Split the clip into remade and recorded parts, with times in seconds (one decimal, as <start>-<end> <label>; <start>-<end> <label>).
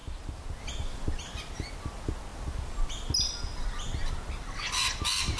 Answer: 0.0-5.4 recorded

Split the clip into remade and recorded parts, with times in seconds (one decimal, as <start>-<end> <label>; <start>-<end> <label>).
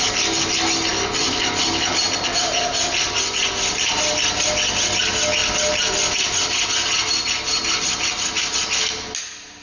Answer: 0.0-9.6 recorded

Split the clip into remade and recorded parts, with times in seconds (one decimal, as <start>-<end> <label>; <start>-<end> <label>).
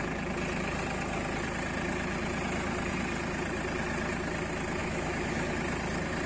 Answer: 0.0-4.8 recorded; 4.8-5.5 remade; 5.5-6.3 recorded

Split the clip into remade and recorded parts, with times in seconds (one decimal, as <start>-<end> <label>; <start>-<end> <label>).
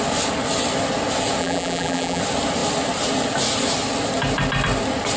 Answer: 0.0-1.4 recorded; 1.4-2.2 remade; 2.2-5.2 recorded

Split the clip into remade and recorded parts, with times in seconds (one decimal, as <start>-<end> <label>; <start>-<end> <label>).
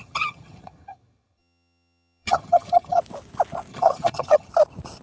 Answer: 0.0-3.0 remade; 3.0-3.7 recorded; 3.7-4.5 remade; 4.5-5.0 recorded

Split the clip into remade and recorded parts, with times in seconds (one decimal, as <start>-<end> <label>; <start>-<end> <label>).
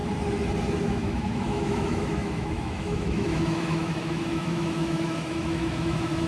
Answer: 0.0-0.9 recorded; 0.9-6.3 remade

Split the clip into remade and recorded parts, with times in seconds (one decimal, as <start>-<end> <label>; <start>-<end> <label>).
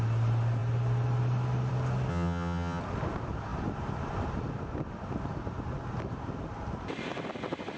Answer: 0.0-2.1 recorded; 2.1-2.8 remade; 2.8-7.8 recorded